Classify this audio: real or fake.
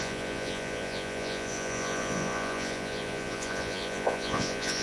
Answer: fake